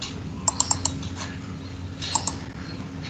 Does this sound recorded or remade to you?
recorded